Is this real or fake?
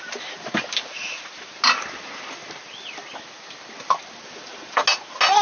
real